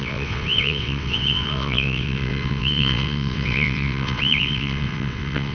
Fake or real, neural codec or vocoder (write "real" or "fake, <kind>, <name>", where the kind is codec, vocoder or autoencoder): fake, vocoder, WaveNeXt